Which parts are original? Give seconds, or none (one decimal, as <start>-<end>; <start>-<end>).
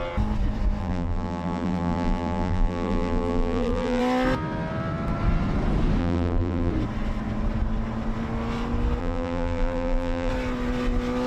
0.0-0.8; 4.0-6.0; 6.7-9.0; 10.3-11.3